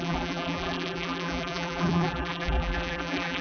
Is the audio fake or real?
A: fake